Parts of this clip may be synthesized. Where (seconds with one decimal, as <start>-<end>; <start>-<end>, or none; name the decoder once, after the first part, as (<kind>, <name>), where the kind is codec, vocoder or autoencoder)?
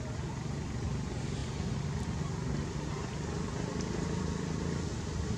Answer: none